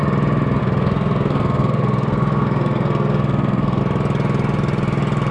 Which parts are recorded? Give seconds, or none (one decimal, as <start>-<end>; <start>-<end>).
0.0-0.6; 3.8-5.3